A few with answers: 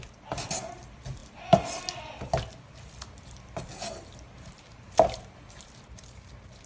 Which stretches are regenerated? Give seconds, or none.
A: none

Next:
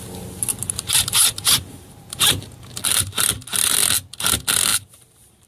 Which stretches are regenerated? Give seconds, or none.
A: 0.6-2.5 (vocoder, BigVGAN v2); 4.7-5.5

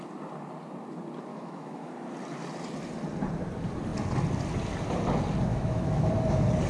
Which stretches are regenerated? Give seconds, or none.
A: 1.3-1.9 (autoencoder, DAC-VAE); 5.5-6.1

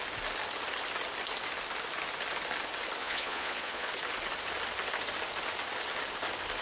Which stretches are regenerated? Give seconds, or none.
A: 3.0-3.9 (vocoder, Vocos)

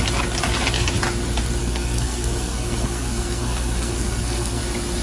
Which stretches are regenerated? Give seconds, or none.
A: 1.6-4.6 (codec, SNAC)

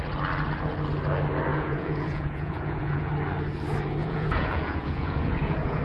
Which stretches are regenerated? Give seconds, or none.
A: 1.5-3.1 (vocoder, Vocos); 4.0-5.8